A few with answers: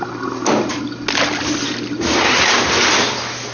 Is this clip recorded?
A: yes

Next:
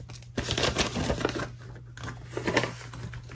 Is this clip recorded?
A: yes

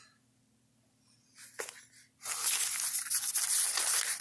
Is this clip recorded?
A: yes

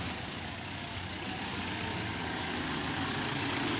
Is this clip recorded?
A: no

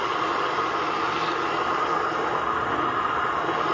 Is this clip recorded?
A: yes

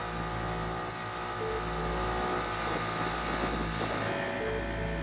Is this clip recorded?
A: yes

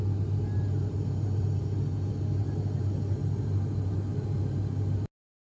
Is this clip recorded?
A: yes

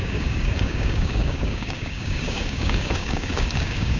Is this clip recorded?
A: no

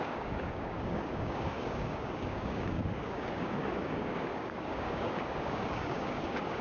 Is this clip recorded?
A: no